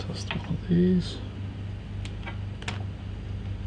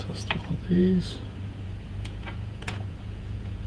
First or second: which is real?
first